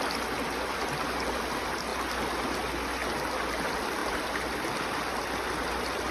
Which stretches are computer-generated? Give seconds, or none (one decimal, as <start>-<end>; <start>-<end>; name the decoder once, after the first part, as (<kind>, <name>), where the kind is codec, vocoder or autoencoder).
none

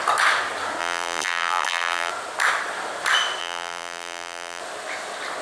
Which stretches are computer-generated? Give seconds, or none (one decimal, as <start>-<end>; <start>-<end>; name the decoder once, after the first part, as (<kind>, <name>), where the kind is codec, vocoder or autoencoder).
0.8-2.1 (vocoder, BigVGAN v2); 3.4-4.6

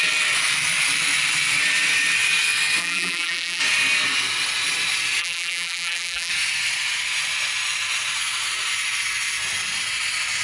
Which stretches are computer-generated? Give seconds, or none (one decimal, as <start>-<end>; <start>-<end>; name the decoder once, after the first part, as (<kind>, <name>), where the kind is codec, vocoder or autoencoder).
2.8-3.6 (vocoder, BigVGAN v2); 5.2-6.3

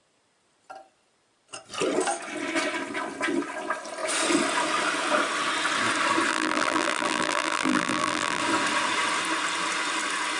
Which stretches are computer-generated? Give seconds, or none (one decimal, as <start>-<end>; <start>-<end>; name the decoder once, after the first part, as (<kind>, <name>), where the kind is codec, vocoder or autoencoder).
6.3-8.4 (vocoder, BigVGAN v2)

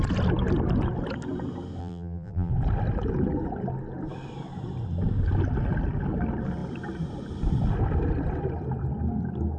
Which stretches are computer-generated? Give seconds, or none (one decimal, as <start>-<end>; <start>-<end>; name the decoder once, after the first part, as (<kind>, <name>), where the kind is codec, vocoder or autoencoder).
1.8-2.5 (vocoder, BigVGAN v2)

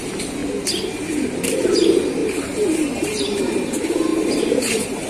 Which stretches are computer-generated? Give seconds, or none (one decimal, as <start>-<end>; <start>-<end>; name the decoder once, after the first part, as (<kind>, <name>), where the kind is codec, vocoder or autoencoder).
0.0-0.4 (vocoder, BigVGAN v2); 1.0-5.1

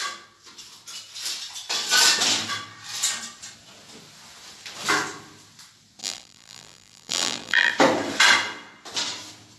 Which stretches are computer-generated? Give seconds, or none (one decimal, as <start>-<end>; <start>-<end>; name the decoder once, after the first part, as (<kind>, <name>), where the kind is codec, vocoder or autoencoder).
6.0-7.7 (vocoder, BigVGAN v2)

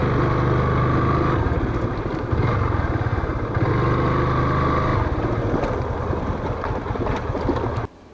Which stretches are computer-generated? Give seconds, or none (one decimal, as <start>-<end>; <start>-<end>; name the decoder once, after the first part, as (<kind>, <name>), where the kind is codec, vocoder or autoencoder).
3.1-3.7 (vocoder, BigVGAN v2)